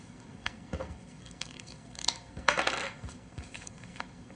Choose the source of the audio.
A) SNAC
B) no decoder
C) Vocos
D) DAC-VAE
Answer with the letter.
A